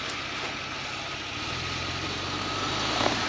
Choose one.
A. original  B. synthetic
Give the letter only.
A